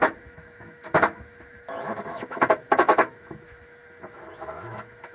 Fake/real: fake